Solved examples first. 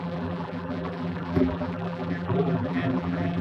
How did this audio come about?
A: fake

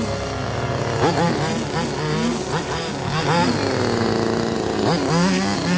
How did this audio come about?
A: real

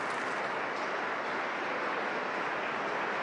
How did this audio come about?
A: real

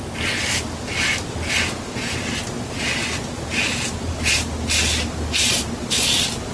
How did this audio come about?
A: real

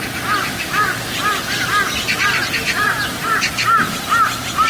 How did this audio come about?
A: real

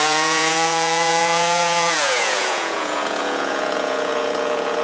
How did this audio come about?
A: fake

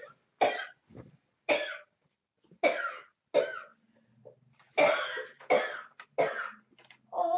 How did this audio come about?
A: real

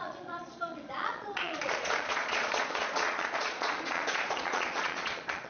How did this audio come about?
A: fake